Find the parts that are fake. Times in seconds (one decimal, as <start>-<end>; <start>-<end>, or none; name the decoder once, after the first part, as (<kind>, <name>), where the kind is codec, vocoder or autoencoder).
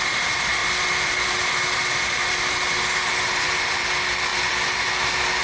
none